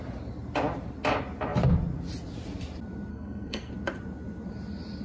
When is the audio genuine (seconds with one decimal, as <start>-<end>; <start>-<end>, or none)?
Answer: 0.0-3.1; 3.7-5.0